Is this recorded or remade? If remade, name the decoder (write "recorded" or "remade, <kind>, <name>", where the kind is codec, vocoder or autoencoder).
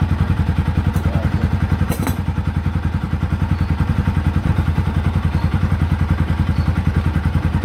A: remade, vocoder, BigVGAN v2